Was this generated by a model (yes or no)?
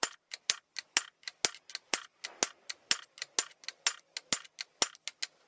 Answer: no